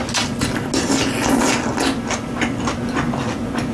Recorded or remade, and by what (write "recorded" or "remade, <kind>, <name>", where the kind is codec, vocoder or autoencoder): recorded